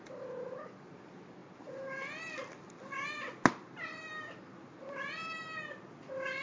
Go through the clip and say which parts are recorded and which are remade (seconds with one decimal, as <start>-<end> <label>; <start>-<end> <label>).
0.0-6.4 recorded